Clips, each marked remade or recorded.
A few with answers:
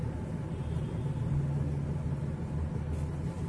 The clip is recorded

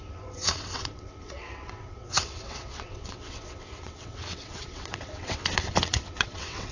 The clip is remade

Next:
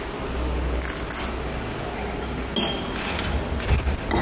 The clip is recorded